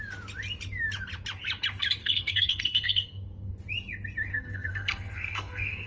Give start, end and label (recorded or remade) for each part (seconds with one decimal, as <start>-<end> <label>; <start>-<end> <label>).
0.0-2.0 recorded; 2.0-3.5 remade; 3.5-4.3 recorded; 4.3-5.9 remade